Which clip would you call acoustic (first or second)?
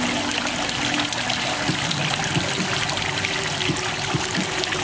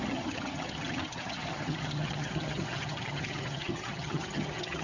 first